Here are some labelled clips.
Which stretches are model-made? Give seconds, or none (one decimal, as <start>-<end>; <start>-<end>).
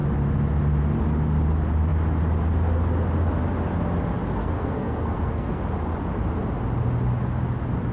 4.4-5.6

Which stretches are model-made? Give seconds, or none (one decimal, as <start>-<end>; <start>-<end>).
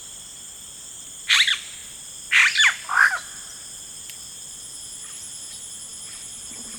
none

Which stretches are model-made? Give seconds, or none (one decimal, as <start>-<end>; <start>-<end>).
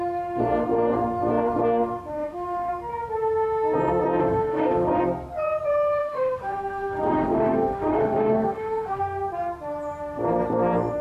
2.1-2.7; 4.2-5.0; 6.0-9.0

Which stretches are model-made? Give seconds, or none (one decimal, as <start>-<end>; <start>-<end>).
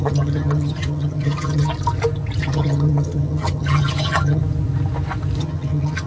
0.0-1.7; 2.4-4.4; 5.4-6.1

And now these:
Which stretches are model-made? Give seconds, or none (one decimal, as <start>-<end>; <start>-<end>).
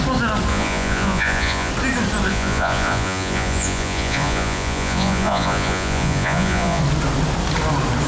0.5-1.7; 2.3-6.8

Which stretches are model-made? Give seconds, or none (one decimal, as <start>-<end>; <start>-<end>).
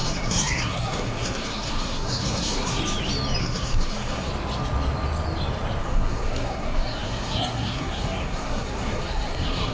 0.0-2.8; 3.4-4.3; 5.8-9.7